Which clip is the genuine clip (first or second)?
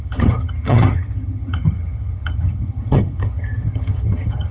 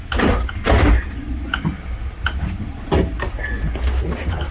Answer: second